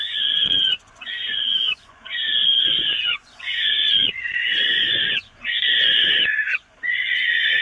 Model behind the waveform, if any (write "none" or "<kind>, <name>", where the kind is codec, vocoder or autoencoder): vocoder, Vocos